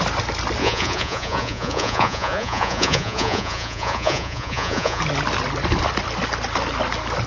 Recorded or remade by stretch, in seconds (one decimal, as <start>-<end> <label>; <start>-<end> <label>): 0.0-0.6 recorded; 0.6-5.0 remade; 5.0-7.3 recorded